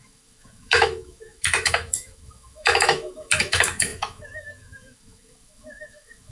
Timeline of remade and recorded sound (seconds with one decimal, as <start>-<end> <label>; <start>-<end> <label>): 0.0-6.3 remade